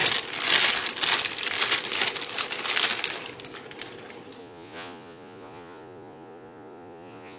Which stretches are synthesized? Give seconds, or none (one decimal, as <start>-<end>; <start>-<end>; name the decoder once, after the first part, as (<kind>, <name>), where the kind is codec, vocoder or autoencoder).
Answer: 4.4-7.4 (vocoder, Vocos)